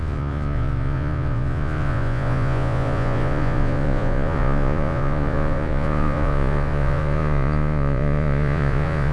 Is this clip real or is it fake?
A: fake